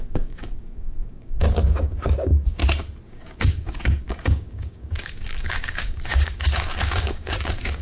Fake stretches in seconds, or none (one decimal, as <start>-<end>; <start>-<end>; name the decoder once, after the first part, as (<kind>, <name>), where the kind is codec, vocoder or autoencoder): 0.0-2.6 (codec, DAC); 3.1-7.8